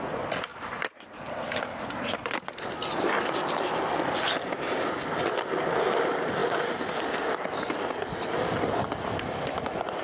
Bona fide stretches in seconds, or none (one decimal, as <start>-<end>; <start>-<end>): 0.0-10.0